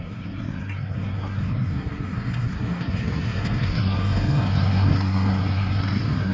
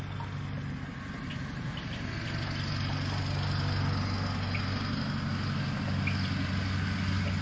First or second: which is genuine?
second